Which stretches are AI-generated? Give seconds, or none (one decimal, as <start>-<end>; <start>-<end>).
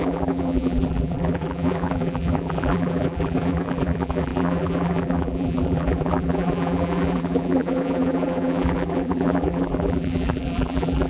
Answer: 0.0-11.1